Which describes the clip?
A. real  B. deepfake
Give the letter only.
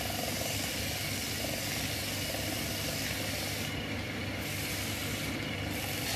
A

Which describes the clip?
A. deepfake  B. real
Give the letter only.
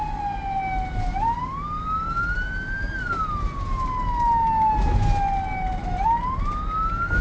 B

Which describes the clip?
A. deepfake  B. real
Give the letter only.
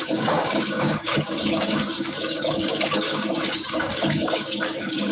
A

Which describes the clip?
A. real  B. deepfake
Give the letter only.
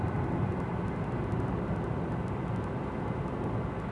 A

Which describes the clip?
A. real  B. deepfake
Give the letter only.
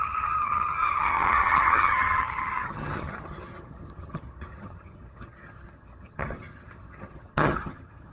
B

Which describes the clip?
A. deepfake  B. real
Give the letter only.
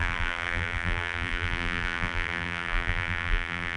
A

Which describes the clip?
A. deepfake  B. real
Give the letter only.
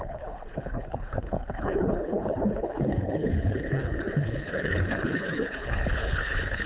A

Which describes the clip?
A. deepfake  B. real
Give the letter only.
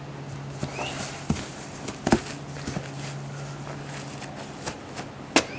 B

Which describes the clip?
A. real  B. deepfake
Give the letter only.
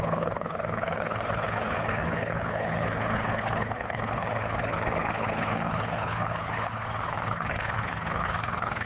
B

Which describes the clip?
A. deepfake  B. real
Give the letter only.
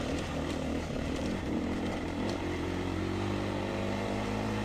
A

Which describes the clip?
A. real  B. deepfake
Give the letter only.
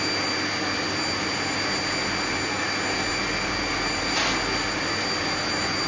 A